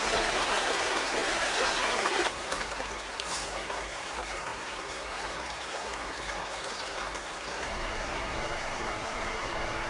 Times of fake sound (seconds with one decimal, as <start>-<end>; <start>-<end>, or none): 0.0-9.9